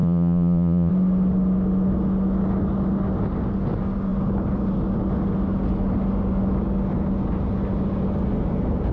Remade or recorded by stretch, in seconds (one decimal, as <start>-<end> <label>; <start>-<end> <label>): 0.0-0.9 remade; 0.9-8.9 recorded